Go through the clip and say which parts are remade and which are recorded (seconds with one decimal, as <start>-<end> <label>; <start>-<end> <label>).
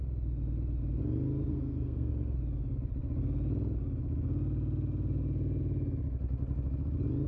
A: 0.0-1.5 recorded; 1.5-2.1 remade; 2.1-7.3 recorded